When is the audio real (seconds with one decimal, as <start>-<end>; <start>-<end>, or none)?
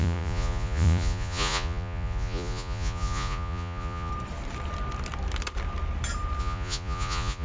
4.1-6.4